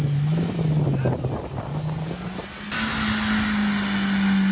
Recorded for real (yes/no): yes